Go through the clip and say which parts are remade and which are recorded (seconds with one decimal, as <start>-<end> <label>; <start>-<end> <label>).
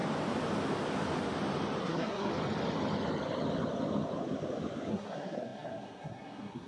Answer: 0.0-1.8 recorded; 1.8-2.3 remade; 2.3-4.9 recorded; 4.9-6.7 remade